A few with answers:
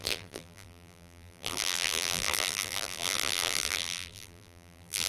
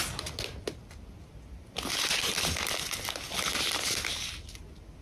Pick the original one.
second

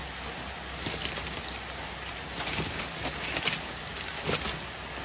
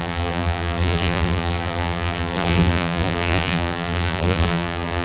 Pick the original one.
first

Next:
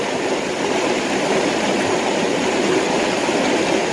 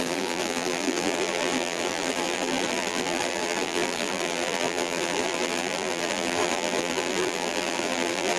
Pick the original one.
first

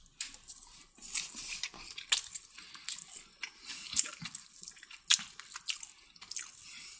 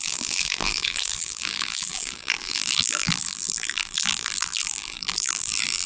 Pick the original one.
first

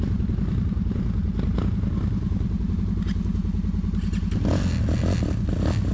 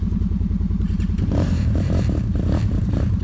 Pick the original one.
first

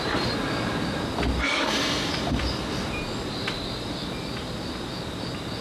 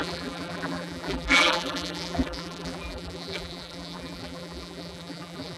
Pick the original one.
first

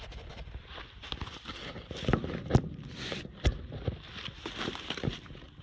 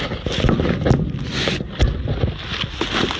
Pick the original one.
second